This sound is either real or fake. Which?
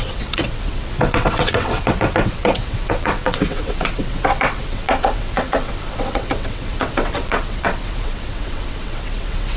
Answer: fake